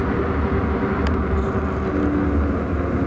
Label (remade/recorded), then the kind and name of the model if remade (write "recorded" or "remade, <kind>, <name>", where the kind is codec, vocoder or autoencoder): recorded